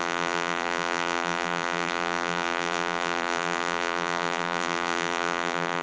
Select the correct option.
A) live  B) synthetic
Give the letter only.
B